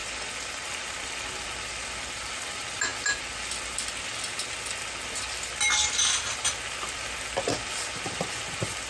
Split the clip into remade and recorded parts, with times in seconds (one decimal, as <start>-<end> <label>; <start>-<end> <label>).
0.0-8.9 recorded